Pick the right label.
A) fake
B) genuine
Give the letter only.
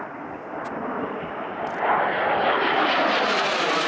B